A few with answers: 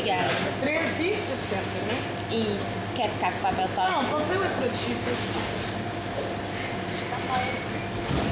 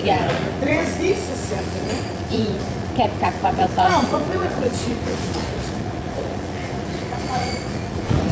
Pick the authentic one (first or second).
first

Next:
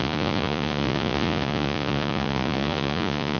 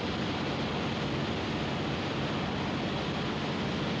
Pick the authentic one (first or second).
second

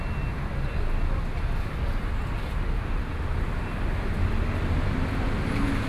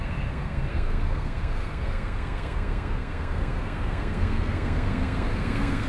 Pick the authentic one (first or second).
first